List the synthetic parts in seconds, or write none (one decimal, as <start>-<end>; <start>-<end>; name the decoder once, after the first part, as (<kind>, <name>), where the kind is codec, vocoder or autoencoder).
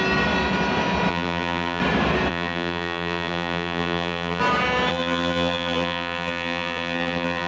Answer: 1.1-1.8 (vocoder, BigVGAN v2); 2.3-4.4; 4.9-7.5